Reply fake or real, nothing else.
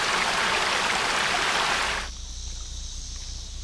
real